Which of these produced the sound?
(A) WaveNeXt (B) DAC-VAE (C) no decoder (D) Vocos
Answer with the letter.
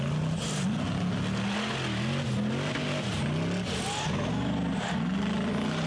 C